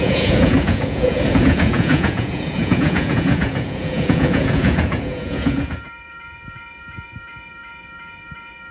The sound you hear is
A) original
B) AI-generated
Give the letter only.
B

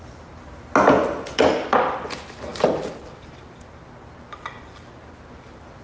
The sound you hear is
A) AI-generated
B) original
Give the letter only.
B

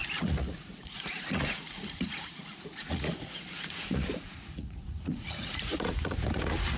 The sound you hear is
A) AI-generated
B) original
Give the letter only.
A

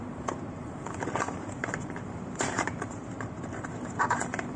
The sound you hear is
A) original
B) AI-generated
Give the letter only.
B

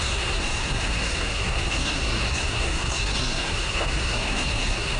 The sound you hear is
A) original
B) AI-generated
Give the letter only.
B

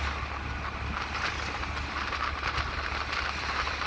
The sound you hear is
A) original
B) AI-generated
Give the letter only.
A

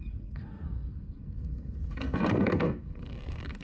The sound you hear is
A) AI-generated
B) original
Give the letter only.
A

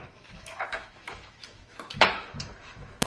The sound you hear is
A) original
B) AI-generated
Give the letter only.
B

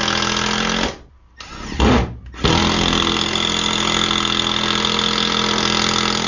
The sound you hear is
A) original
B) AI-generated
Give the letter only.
A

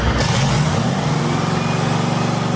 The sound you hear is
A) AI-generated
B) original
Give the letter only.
B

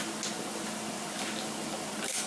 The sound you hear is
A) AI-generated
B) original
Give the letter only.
B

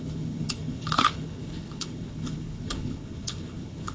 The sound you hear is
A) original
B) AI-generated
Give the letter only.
B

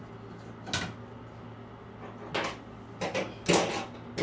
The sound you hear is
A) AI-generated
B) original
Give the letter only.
B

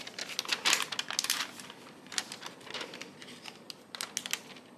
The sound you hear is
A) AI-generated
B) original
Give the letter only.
B